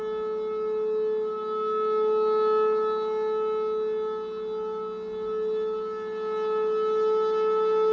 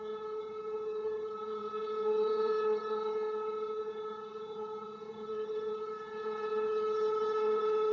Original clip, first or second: first